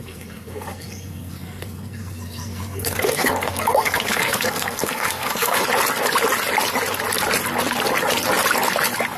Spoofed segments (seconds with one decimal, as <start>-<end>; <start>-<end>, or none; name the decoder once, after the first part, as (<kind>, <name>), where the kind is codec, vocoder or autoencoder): 0.0-5.6 (codec, SNAC)